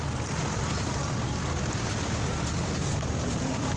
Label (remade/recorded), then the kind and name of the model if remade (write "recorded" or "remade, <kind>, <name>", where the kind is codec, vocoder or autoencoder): recorded